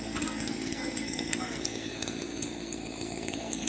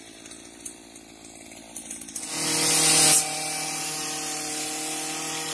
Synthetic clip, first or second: first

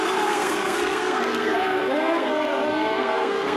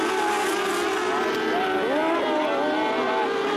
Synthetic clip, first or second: first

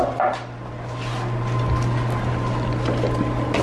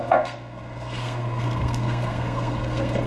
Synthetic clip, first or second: second